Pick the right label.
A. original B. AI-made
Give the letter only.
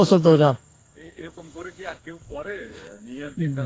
B